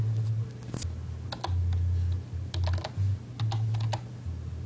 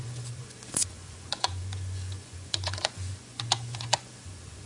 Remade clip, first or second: second